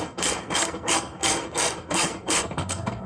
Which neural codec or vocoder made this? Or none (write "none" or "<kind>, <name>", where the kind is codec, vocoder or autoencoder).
codec, SNAC